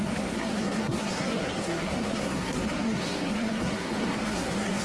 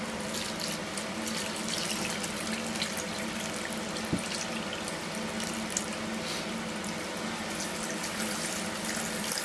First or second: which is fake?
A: first